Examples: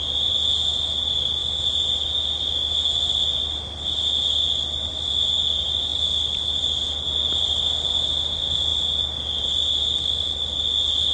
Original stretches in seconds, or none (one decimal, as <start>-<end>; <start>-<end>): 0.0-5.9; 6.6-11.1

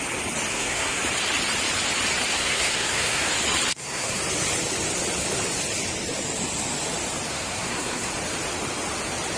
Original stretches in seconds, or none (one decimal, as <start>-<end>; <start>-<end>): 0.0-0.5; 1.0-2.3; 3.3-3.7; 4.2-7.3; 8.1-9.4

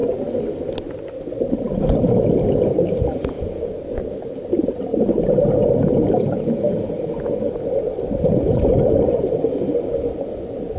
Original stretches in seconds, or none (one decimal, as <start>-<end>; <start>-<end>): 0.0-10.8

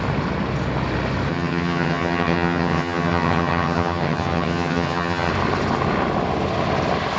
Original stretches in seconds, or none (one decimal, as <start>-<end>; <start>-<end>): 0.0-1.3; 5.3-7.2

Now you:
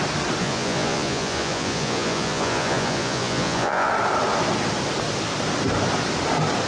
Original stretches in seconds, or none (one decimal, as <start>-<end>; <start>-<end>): 0.0-0.4; 3.9-6.7

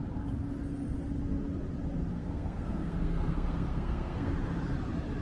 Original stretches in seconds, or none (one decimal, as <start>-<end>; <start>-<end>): 0.0-2.1; 4.3-5.2